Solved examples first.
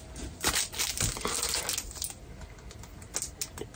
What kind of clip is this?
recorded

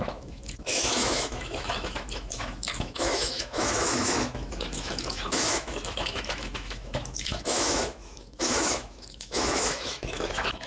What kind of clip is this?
remade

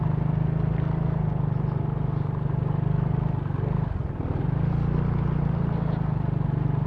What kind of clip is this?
recorded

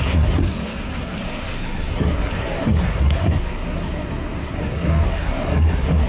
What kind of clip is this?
remade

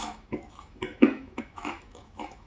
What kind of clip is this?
remade